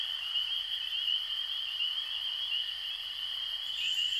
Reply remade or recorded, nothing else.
remade